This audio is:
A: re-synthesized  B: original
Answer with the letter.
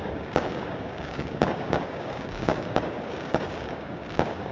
A